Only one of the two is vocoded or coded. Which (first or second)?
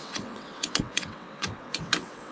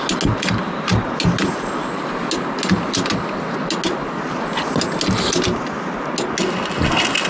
first